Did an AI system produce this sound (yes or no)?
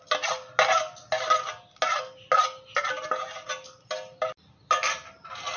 no